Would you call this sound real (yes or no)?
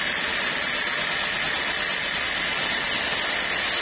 yes